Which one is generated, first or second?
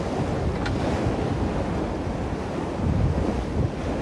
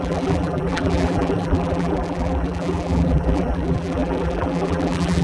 second